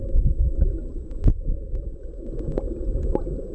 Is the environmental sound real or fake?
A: real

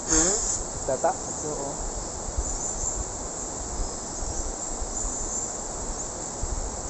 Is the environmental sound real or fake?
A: real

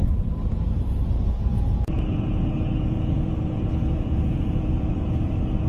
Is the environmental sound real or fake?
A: fake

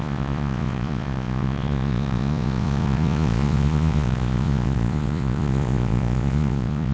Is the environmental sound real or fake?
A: fake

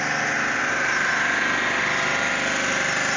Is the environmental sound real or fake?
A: real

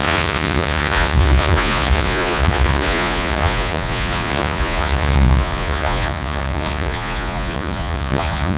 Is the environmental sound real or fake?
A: fake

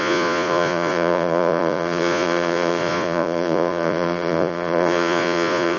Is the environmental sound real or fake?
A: fake